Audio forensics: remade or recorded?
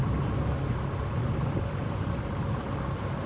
recorded